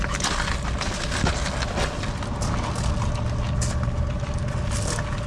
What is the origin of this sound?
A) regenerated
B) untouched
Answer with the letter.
B